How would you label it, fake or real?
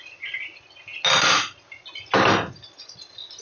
real